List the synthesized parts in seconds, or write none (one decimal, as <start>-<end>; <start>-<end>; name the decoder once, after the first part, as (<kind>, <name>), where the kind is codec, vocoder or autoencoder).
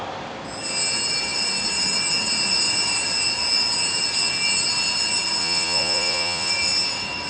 5.4-6.5 (vocoder, Vocos)